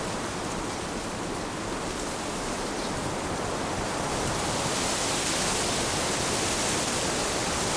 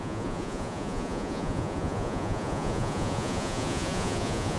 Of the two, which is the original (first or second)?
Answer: first